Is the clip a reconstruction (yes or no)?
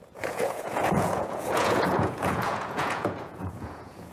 yes